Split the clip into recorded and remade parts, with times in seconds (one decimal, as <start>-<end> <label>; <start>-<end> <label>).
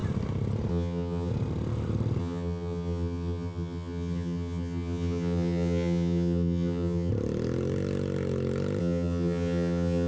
0.0-0.7 recorded; 0.7-1.3 remade; 1.3-2.2 recorded; 2.2-7.1 remade; 7.1-8.8 recorded; 8.8-10.1 remade